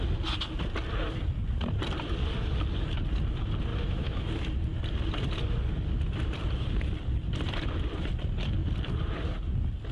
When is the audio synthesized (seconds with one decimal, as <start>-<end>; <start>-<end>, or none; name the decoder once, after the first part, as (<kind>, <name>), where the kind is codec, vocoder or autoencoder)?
3.7-4.3 (autoencoder, DAC-VAE)